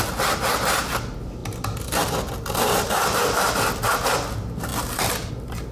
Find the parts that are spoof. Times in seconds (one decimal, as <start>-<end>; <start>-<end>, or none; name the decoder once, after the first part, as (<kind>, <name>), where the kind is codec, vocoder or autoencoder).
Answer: none